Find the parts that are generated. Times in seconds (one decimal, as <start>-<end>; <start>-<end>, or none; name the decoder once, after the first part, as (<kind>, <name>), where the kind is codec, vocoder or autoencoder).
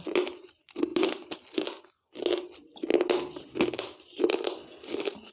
none